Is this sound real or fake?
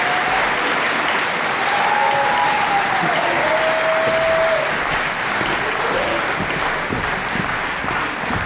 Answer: real